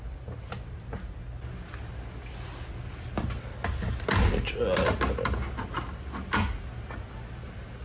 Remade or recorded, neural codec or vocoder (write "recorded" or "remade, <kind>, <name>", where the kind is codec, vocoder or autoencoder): recorded